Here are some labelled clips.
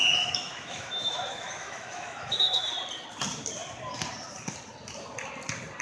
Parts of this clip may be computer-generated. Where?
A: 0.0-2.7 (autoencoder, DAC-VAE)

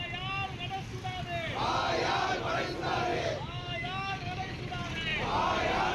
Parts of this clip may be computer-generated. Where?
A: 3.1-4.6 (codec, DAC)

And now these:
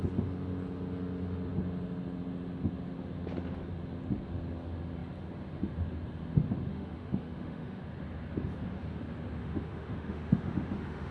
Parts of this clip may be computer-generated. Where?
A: 6.7-7.8 (autoencoder, DAC-VAE); 9.4-11.1

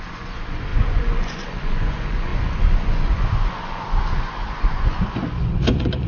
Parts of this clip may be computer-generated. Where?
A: 0.0-6.1 (vocoder, Vocos)